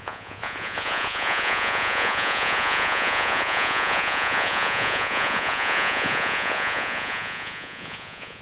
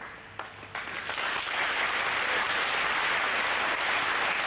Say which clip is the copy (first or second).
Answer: first